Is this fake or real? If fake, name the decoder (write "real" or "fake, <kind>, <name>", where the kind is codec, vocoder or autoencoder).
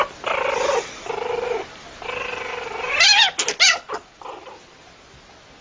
real